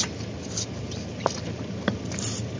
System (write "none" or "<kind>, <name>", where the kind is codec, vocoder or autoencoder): none